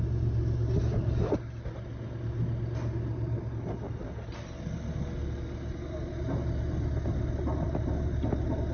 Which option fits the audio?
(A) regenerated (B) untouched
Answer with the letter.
B